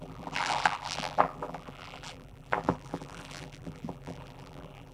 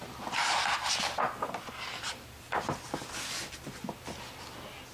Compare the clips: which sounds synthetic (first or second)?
first